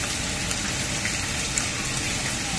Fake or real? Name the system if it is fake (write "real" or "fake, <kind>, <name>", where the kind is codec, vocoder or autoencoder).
real